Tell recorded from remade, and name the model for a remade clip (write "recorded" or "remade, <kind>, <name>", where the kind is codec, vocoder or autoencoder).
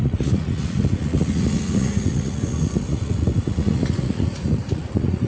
remade, vocoder, Vocos